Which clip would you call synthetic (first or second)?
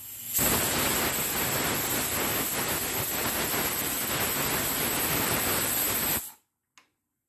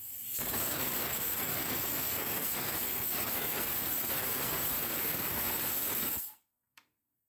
second